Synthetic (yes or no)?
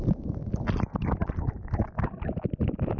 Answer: no